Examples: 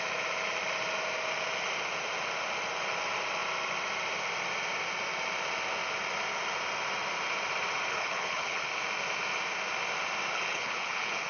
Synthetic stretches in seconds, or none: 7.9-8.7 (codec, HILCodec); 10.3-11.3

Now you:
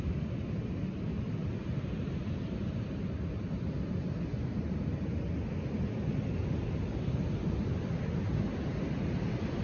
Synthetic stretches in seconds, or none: none

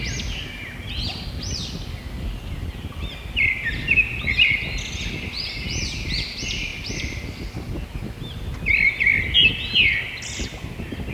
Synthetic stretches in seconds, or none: none

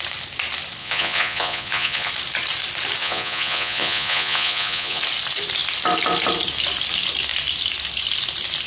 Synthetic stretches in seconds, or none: 0.8-2.1 (vocoder, Vocos); 3.0-5.0

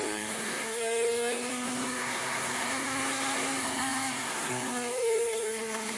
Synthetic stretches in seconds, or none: 0.0-6.0 (codec, SNAC)

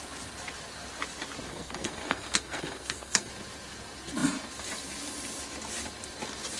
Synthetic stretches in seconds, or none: 1.5-3.3 (codec, SNAC)

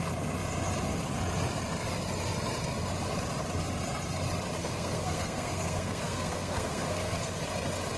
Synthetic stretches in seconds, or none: 4.6-7.4 (codec, SNAC)